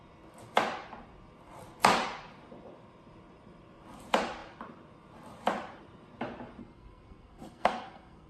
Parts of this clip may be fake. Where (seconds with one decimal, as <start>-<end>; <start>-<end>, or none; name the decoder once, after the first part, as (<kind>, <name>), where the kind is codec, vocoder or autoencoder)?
6.6-8.3 (codec, SNAC)